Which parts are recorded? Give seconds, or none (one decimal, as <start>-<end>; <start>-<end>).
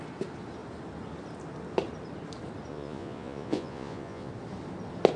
0.0-2.7; 4.3-5.2